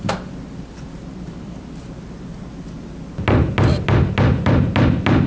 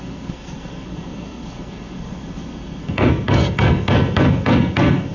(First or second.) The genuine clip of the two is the first